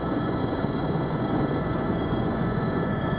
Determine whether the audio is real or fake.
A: fake